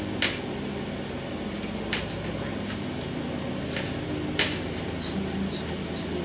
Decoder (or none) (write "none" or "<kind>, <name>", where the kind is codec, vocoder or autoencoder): none